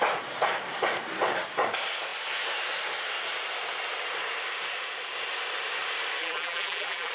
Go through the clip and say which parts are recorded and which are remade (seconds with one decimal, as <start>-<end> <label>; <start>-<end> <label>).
0.0-6.2 recorded; 6.2-7.1 remade